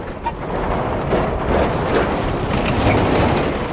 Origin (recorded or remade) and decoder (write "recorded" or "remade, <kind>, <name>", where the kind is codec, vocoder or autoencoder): recorded